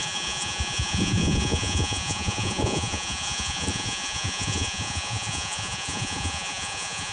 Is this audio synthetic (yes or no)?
yes